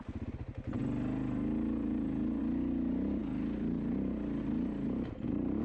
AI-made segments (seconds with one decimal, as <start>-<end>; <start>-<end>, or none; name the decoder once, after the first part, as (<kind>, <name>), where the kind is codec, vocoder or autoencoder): none